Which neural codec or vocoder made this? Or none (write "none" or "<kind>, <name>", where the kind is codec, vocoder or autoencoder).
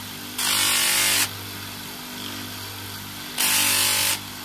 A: none